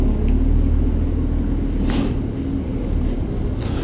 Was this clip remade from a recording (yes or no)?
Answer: no